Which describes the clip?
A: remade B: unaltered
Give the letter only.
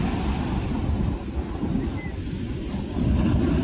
B